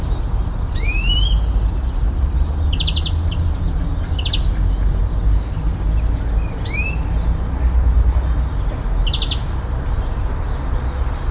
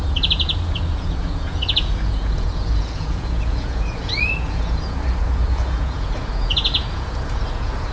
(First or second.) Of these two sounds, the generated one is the second